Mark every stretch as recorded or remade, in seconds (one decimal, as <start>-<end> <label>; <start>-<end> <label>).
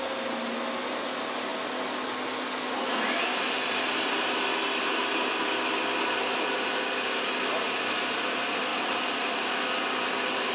0.0-10.5 recorded